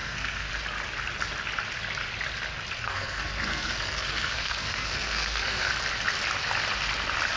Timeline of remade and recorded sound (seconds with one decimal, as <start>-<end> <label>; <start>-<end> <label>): 0.0-0.5 remade; 0.5-2.8 recorded; 2.8-5.7 remade; 5.7-7.4 recorded